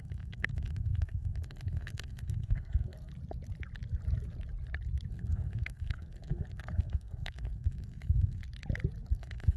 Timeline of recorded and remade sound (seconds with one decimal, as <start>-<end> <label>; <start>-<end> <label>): 0.0-3.1 remade; 3.1-5.1 recorded; 5.1-8.4 remade; 8.4-9.1 recorded; 9.1-9.6 remade